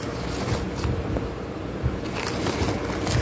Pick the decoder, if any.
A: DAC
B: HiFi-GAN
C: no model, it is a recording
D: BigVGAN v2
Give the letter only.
C